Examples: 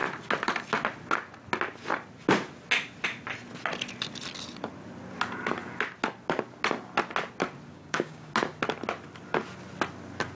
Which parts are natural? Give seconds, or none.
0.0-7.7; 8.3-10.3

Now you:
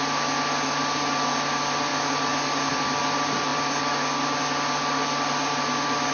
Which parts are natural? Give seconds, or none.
0.0-6.1

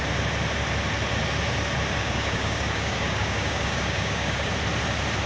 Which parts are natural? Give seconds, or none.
0.0-2.0; 4.5-5.3

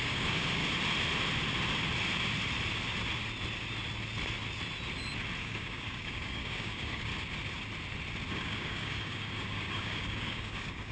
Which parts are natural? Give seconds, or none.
0.6-5.4; 7.1-8.3

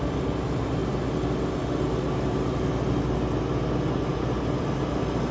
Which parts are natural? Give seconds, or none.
0.0-5.3

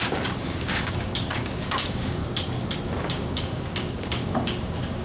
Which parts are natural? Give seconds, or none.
2.2-3.0

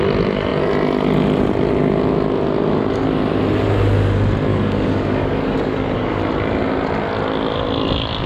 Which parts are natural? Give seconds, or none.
0.0-4.5; 6.2-8.3

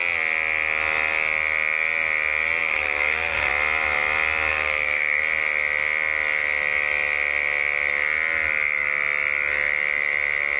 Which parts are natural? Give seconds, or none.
0.0-2.6; 3.5-4.5; 5.2-10.6